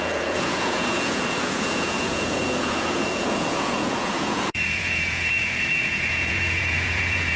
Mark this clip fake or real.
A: fake